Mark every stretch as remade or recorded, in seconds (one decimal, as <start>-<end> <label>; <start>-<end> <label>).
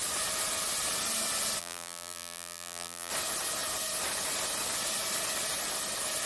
0.0-1.6 recorded; 1.6-3.1 remade; 3.1-6.3 recorded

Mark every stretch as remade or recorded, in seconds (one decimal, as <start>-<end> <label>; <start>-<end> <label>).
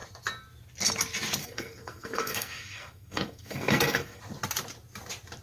0.0-1.4 recorded; 1.4-4.2 remade; 4.2-5.4 recorded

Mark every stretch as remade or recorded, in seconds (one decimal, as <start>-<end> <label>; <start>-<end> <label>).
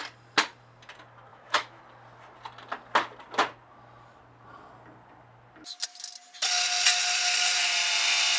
0.0-1.3 recorded; 1.3-1.8 remade; 1.8-8.4 recorded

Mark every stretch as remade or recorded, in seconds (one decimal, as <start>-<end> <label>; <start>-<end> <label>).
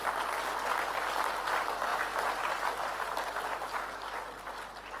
0.0-1.9 recorded; 1.9-3.8 remade; 3.8-5.0 recorded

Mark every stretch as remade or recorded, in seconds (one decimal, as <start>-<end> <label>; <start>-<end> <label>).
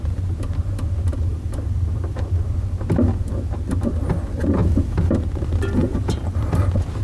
0.0-1.3 recorded; 1.3-2.6 remade; 2.6-4.6 recorded; 4.6-5.1 remade; 5.1-5.8 recorded; 5.8-6.6 remade; 6.6-7.0 recorded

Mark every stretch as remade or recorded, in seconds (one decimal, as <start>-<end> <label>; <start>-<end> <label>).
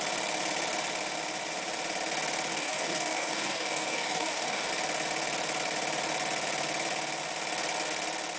0.0-2.5 recorded; 2.5-4.7 remade; 4.7-8.4 recorded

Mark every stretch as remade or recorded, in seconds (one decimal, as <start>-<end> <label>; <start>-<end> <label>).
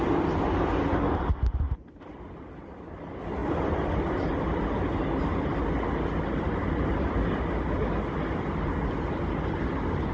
0.0-10.1 recorded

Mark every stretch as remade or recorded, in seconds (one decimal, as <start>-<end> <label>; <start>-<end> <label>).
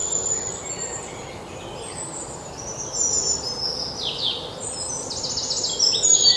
0.0-6.4 recorded